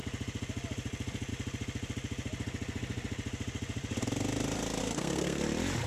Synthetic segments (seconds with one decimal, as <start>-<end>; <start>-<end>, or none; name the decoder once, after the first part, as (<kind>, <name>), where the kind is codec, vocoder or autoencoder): 4.8-5.4 (codec, SNAC)